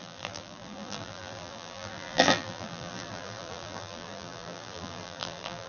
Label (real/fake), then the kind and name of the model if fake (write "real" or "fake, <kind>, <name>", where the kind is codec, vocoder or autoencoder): fake, vocoder, BigVGAN v2